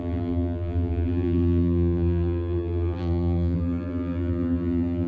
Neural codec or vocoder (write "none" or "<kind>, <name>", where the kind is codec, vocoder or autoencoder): vocoder, BigVGAN v2